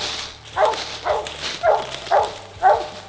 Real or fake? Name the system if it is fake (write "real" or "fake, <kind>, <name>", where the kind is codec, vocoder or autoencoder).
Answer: real